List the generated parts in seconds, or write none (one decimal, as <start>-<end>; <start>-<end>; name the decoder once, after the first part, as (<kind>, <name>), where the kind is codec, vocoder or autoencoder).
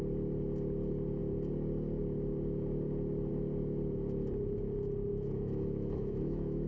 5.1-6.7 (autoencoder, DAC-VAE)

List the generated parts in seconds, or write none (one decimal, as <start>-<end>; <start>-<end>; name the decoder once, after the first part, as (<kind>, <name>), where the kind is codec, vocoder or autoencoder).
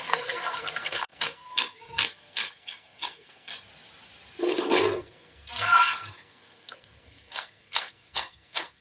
0.0-3.5 (codec, SNAC); 4.4-8.8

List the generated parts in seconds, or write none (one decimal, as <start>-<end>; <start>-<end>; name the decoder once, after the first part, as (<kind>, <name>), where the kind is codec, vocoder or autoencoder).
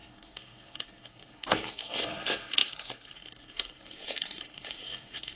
0.0-5.4 (codec, SNAC)